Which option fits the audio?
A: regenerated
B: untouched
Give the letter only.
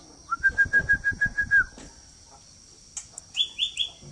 B